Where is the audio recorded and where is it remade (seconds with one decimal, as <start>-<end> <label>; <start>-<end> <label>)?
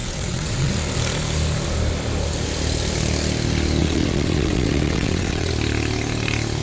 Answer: 0.0-0.7 remade; 0.7-3.8 recorded; 3.8-5.5 remade; 5.5-6.6 recorded